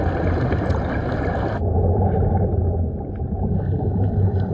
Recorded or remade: recorded